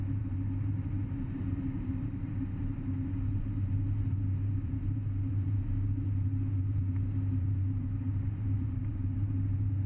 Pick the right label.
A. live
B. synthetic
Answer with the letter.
B